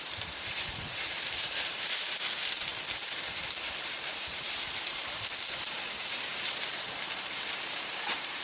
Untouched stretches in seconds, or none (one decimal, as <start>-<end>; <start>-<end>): 2.7-3.5